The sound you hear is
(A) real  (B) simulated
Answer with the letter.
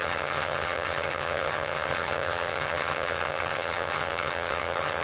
B